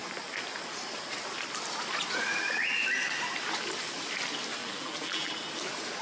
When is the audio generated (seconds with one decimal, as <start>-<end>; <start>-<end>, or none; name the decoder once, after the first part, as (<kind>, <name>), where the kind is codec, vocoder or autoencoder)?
4.6-5.3 (vocoder, BigVGAN v2)